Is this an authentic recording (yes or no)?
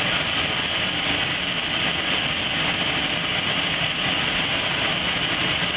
yes